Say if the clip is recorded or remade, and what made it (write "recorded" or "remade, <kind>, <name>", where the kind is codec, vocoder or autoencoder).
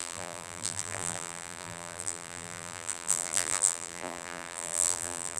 remade, vocoder, BigVGAN v2